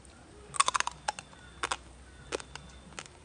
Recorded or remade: recorded